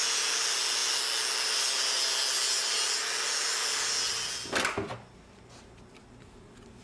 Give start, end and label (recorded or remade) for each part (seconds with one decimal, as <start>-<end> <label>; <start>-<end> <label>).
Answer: 0.0-6.8 recorded